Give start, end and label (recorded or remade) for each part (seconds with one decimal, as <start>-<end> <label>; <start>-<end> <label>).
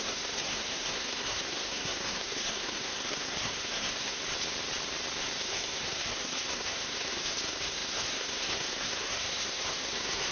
0.0-4.2 remade; 4.2-5.4 recorded; 5.4-10.3 remade